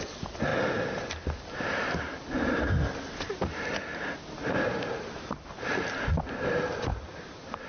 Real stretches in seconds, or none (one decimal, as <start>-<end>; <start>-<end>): 0.0-4.4; 5.2-6.9